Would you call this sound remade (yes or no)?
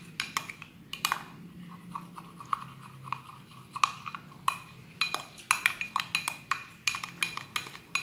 no